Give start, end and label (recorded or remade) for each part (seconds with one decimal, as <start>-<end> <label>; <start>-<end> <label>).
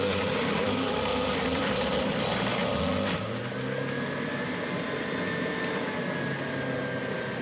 0.0-2.6 remade; 2.6-7.0 recorded; 7.0-7.4 remade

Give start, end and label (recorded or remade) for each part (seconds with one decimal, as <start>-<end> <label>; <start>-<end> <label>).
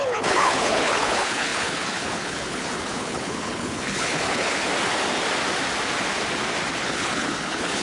0.0-4.7 remade; 4.7-6.7 recorded; 6.7-7.8 remade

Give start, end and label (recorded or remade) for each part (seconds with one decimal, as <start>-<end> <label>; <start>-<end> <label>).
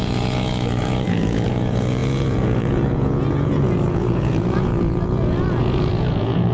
0.0-6.5 remade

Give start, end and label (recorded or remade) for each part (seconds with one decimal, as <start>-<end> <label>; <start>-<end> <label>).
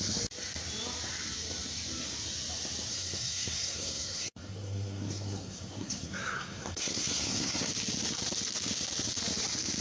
0.0-2.9 recorded; 2.9-7.7 remade; 7.7-9.8 recorded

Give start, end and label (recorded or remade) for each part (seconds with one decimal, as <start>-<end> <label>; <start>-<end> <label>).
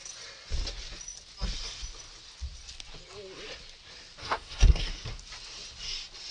0.0-4.2 recorded; 4.2-4.9 remade; 4.9-6.3 recorded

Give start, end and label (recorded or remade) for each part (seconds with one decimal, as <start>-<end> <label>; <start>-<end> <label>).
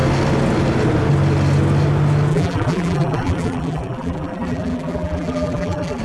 0.0-2.3 recorded; 2.3-6.0 remade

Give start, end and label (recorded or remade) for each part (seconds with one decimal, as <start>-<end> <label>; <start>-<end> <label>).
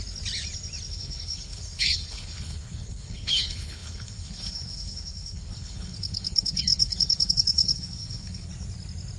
0.0-0.9 recorded; 0.9-8.5 remade; 8.5-9.2 recorded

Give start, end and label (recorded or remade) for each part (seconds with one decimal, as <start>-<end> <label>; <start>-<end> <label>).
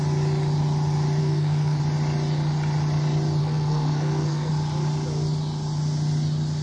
0.0-1.2 recorded; 1.2-1.8 remade; 1.8-3.4 recorded; 3.4-4.5 remade; 4.5-6.6 recorded